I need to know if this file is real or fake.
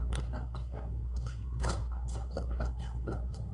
fake